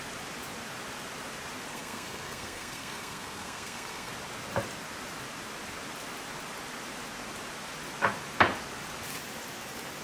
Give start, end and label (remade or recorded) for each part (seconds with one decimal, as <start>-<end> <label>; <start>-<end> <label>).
0.0-1.7 recorded; 1.7-4.1 remade; 4.1-10.0 recorded